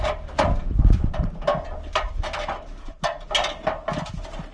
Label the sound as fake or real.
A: real